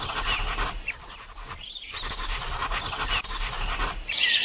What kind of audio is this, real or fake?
fake